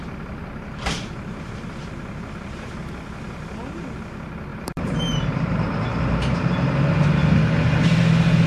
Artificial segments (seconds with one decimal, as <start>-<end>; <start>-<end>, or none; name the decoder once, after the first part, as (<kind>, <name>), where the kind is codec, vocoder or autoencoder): 0.5-2.8 (vocoder, BigVGAN v2); 4.5-6.7